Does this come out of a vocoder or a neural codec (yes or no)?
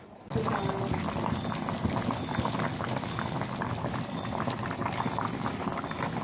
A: no